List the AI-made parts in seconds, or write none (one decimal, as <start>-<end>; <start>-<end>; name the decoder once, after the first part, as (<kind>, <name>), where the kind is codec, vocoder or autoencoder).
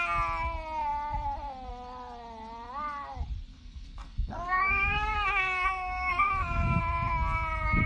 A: 3.5-6.8 (codec, SNAC)